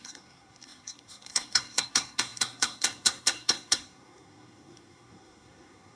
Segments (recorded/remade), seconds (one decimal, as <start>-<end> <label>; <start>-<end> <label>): 0.0-6.0 remade